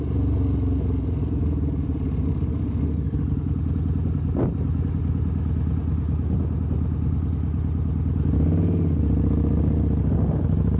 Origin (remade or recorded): recorded